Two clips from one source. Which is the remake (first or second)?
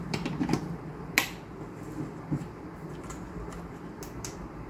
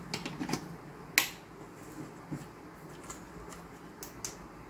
first